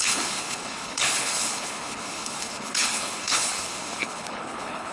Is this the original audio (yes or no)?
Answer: no